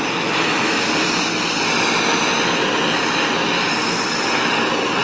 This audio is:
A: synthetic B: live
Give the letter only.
B